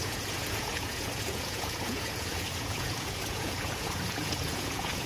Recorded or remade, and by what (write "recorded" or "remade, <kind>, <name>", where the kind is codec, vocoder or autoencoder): remade, vocoder, Vocos